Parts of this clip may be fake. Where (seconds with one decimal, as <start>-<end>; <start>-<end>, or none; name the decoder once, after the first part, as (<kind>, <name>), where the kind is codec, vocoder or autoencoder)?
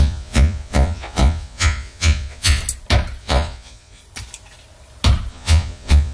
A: 0.0-2.6 (vocoder, Vocos); 3.2-4.0; 5.3-6.1